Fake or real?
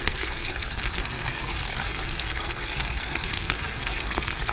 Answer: fake